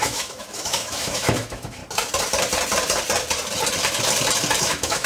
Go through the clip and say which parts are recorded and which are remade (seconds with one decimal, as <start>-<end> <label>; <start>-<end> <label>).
0.0-1.8 remade; 1.8-4.6 recorded; 4.6-5.1 remade